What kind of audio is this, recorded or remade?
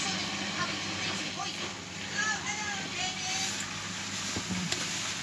recorded